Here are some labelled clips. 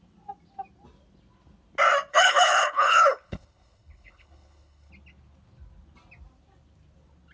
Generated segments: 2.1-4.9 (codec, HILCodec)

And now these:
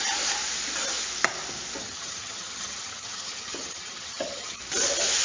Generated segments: 1.8-4.6 (vocoder, HiFi-GAN)